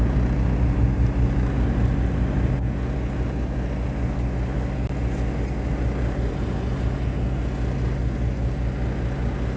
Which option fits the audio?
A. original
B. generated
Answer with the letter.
A